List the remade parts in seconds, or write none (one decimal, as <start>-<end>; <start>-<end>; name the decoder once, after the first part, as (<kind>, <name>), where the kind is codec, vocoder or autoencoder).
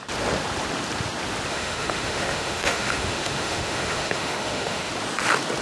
1.5-4.9 (autoencoder, DAC-VAE)